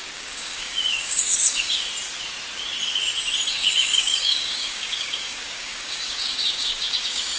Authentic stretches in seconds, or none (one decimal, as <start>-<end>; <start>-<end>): 1.9-3.5